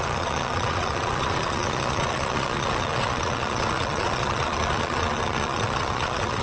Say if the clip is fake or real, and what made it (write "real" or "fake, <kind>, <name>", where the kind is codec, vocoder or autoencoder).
fake, vocoder, Vocos